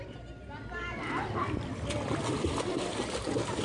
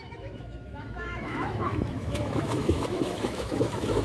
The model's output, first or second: second